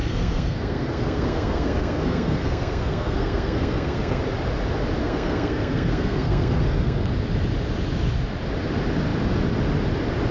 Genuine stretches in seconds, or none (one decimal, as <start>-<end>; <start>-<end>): 4.2-5.0; 7.1-10.3